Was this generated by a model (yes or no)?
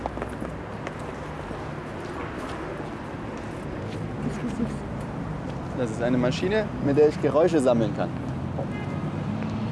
no